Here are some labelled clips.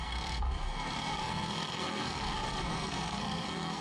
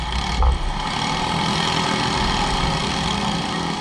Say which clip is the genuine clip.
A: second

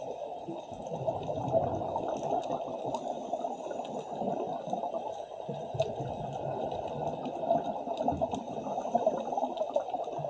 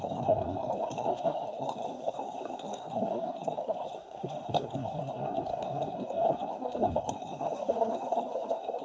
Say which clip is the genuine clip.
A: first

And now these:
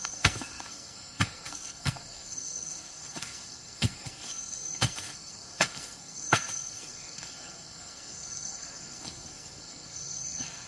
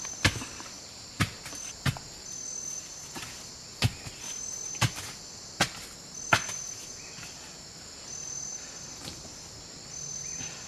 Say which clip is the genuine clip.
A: second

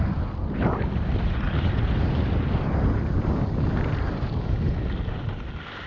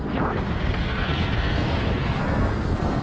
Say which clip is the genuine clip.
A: first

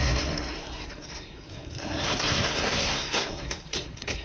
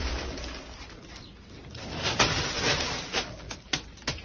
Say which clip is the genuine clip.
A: second